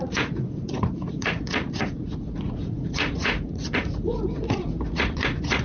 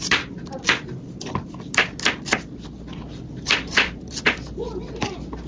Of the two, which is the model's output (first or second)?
first